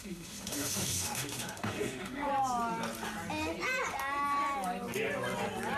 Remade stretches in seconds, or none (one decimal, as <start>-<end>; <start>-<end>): 0.0-2.3